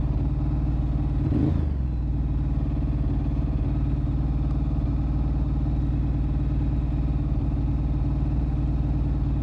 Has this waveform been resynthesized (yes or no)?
no